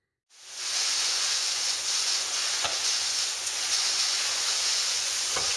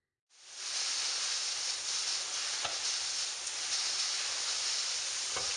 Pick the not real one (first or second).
first